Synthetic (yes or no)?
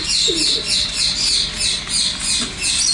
no